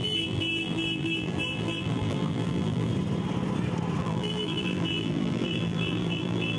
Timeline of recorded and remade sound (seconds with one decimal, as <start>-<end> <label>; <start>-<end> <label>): 0.0-2.9 remade; 2.9-4.0 recorded; 4.0-6.6 remade